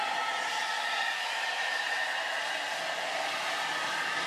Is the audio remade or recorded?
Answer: recorded